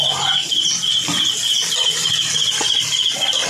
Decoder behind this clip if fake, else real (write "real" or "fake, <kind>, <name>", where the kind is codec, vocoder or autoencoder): real